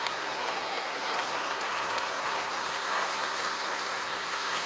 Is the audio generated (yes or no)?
yes